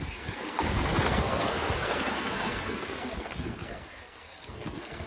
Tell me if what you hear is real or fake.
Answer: fake